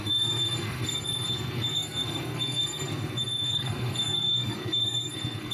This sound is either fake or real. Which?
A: fake